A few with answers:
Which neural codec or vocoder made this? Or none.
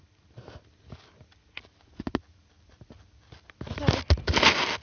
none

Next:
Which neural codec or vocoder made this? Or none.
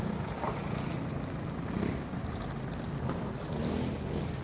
none